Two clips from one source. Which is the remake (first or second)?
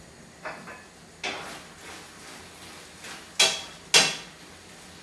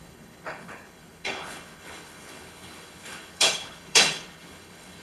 second